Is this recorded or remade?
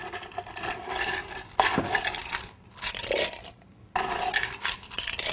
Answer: recorded